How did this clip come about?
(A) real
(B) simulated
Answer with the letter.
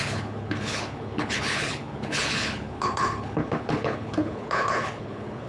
B